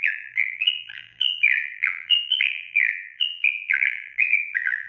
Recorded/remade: remade